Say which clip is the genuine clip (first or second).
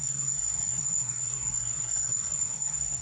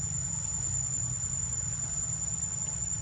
second